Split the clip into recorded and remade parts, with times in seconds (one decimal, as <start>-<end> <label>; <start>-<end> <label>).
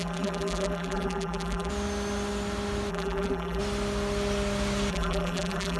0.0-1.7 remade; 1.7-2.9 recorded; 2.9-3.6 remade; 3.6-4.9 recorded; 4.9-5.8 remade